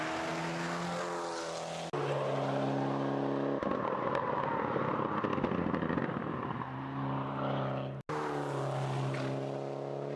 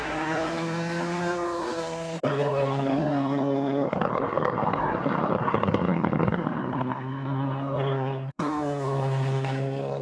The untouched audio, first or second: first